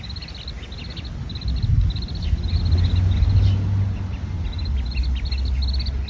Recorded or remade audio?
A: recorded